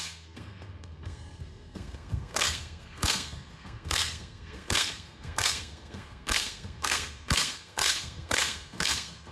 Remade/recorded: remade